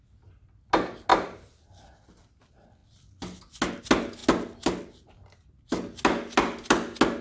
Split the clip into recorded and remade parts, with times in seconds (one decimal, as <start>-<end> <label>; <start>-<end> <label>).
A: 0.0-1.1 recorded; 1.1-2.4 remade; 2.4-7.2 recorded